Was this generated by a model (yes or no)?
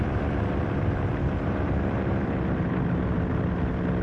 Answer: yes